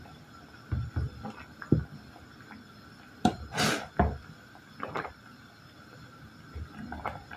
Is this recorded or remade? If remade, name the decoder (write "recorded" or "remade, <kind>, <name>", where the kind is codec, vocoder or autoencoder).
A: recorded